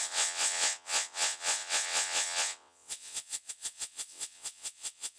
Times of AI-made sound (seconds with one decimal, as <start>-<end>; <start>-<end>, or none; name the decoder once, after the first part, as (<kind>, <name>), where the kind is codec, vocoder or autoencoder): 0.0-5.2 (vocoder, WaveNeXt)